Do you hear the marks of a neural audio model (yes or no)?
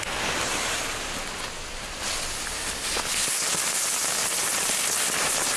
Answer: no